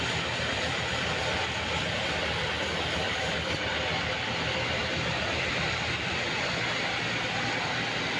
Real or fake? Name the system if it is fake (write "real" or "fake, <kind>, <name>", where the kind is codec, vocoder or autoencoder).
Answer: fake, vocoder, BigVGAN v2